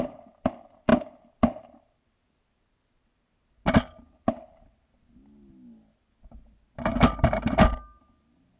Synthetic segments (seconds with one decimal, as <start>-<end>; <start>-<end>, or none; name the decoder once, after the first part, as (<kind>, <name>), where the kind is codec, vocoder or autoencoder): none